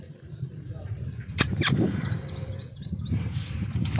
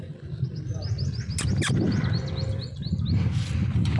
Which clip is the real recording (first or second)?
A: second